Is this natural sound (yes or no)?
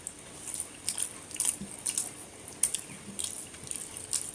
yes